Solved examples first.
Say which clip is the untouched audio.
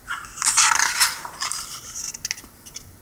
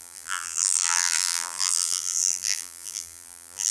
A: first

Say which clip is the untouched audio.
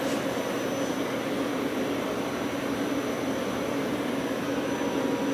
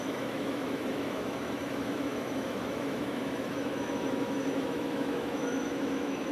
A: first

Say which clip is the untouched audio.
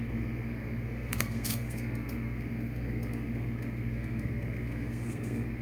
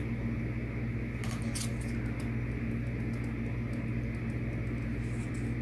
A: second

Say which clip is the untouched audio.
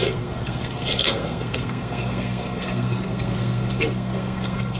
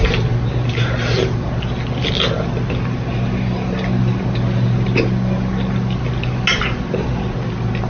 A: second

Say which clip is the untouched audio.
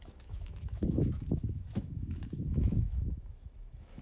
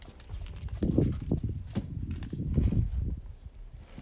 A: second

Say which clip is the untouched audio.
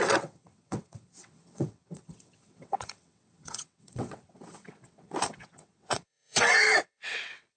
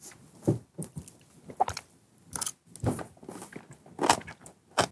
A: second